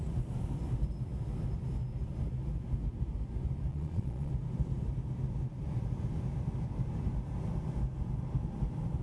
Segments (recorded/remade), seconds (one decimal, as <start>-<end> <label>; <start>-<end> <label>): 0.0-3.7 recorded; 3.7-4.3 remade; 4.3-9.0 recorded

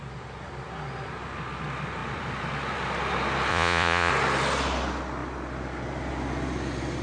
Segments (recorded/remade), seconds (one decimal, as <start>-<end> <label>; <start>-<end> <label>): 0.0-3.5 recorded; 3.5-4.1 remade; 4.1-7.0 recorded

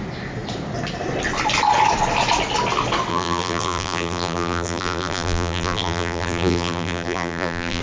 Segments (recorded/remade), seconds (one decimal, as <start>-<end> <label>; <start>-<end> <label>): 0.0-3.1 recorded; 3.1-7.8 remade

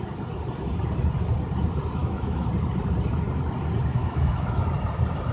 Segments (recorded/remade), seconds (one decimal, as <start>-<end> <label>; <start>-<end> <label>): 0.0-2.0 recorded; 2.0-2.5 remade; 2.5-3.9 recorded; 3.9-4.6 remade; 4.6-5.3 recorded

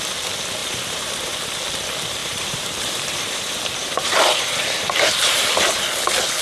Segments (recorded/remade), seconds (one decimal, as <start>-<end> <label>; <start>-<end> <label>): 0.0-0.6 recorded; 0.6-1.4 remade; 1.4-2.2 recorded; 2.2-6.0 remade; 6.0-6.4 recorded

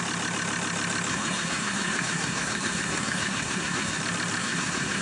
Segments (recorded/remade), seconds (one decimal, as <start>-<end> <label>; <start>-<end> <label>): 0.0-1.1 recorded; 1.1-4.0 remade; 4.0-4.4 recorded; 4.4-5.0 remade